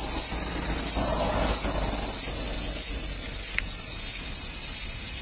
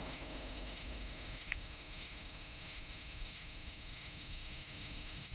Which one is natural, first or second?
first